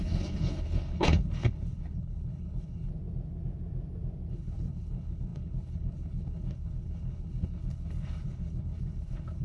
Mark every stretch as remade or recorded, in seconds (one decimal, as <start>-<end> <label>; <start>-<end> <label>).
0.0-2.9 remade; 2.9-4.3 recorded; 4.3-9.4 remade

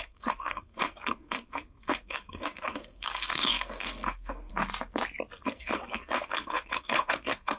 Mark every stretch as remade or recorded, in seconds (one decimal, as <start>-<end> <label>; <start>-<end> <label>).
0.0-4.5 remade; 4.5-5.4 recorded; 5.4-7.6 remade

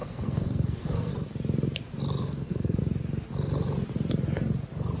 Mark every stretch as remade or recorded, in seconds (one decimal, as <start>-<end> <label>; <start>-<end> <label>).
0.0-1.1 remade; 1.1-2.2 recorded; 2.2-2.8 remade; 2.8-5.0 recorded

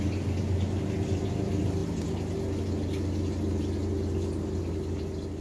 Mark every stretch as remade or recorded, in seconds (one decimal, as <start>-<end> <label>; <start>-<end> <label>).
0.0-5.4 recorded